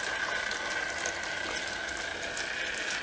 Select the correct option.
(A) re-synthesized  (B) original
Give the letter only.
B